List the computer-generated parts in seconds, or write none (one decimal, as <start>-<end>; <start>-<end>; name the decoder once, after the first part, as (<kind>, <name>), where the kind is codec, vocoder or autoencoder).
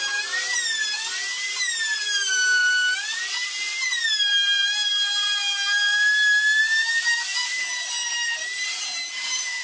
0.0-2.6 (vocoder, BigVGAN v2); 3.3-4.9; 6.6-9.6